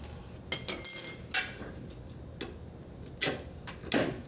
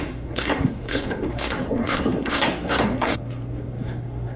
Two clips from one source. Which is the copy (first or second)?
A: second